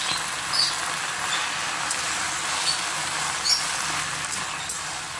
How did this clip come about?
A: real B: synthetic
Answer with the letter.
A